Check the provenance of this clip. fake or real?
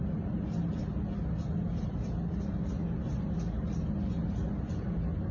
real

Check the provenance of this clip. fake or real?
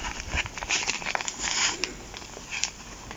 real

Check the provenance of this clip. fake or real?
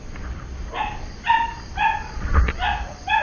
real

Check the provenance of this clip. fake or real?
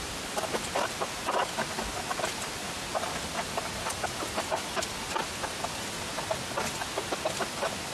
real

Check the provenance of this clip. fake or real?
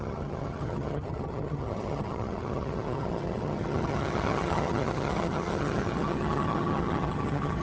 fake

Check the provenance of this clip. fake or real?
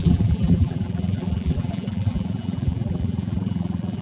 fake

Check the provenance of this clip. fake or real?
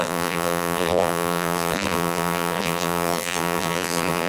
fake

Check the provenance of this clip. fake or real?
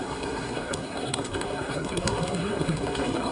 fake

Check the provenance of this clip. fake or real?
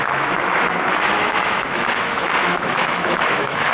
fake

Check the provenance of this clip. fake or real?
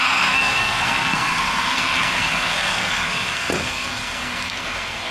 fake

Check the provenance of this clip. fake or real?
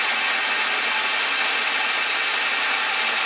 real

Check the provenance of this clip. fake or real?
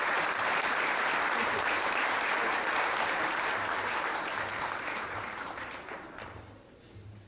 fake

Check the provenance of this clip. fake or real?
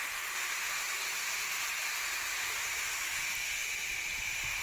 real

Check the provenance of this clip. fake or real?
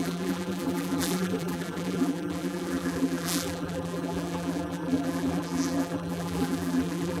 fake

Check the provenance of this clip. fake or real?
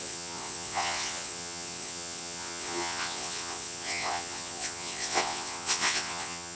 fake